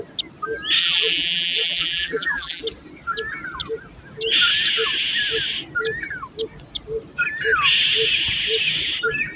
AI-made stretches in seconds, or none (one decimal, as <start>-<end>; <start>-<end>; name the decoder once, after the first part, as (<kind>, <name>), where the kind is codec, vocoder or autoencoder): 0.8-2.6 (vocoder, BigVGAN v2)